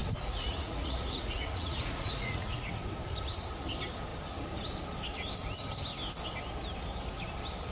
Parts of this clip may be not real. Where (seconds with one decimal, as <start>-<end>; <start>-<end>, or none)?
0.0-2.7